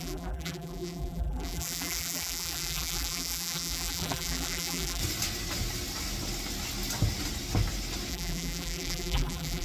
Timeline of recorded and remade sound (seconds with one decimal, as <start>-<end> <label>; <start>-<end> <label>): 0.0-5.0 remade; 5.0-8.1 recorded; 8.1-9.6 remade

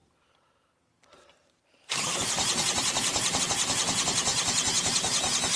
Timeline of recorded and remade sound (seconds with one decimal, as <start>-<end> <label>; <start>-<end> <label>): 0.0-3.4 remade; 3.4-5.6 recorded

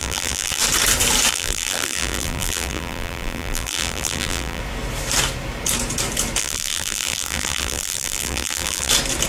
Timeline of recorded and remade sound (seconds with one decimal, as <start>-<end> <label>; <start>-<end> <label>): 0.0-0.6 remade; 0.6-1.3 recorded; 1.3-4.6 remade; 4.6-6.4 recorded; 6.4-8.9 remade; 8.9-9.3 recorded

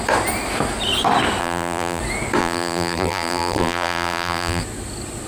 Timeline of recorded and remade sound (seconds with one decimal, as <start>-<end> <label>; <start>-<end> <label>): 0.0-1.4 recorded; 1.4-2.0 remade; 2.0-2.4 recorded; 2.4-4.6 remade; 4.6-5.3 recorded